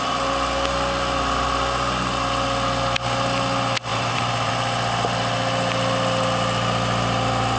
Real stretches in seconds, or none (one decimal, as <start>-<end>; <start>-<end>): 0.0-3.9; 4.5-7.6